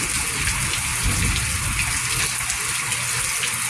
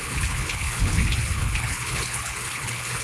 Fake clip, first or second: second